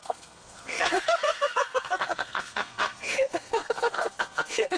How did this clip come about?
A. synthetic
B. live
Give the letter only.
A